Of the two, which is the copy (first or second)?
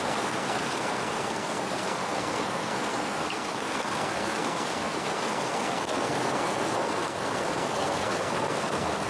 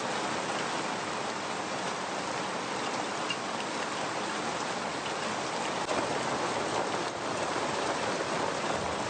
first